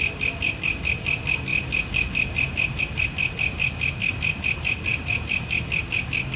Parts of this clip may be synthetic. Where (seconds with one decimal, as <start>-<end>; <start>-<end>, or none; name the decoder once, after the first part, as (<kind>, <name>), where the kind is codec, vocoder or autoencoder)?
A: none